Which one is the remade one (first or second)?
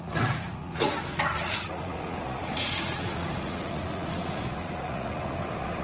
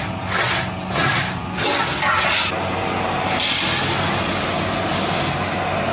first